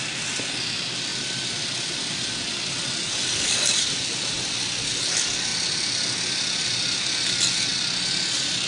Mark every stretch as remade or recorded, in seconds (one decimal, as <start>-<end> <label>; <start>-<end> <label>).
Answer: 0.0-8.7 recorded